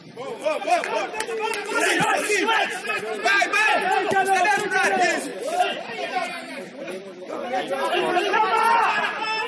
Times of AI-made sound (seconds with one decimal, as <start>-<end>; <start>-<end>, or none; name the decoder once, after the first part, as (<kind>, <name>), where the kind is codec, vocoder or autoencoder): 0.4-1.0 (vocoder, WaveNeXt); 1.6-2.3